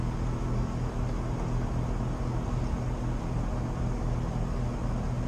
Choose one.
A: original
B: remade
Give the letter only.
A